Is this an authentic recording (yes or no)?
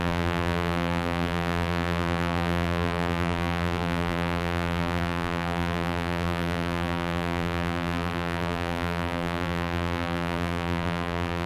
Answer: no